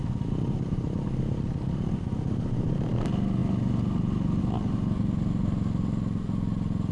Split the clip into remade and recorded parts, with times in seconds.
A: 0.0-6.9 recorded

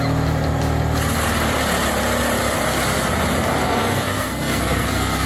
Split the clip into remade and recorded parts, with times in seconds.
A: 0.0-3.6 recorded; 3.6-5.3 remade

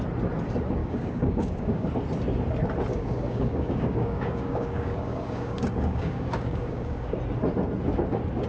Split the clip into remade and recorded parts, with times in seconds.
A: 0.0-0.8 recorded; 0.8-1.9 remade; 1.9-2.9 recorded; 2.9-7.2 remade; 7.2-8.5 recorded

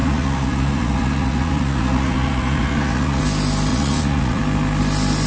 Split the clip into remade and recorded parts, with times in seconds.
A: 0.0-3.2 remade; 3.2-3.7 recorded; 3.7-4.4 remade; 4.4-5.3 recorded

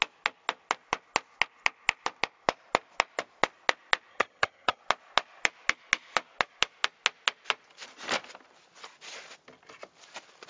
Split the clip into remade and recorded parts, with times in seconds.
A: 0.0-4.1 recorded; 4.1-4.8 remade; 4.8-10.5 recorded

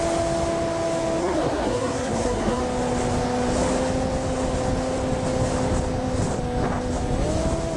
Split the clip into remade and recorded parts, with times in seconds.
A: 0.0-1.2 recorded; 1.2-2.6 remade; 2.6-7.8 recorded